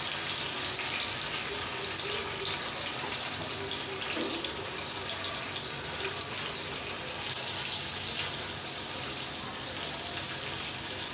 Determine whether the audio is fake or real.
real